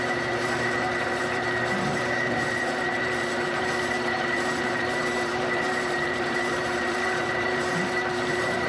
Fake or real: fake